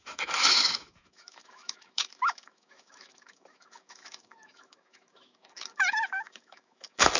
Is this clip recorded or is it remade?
remade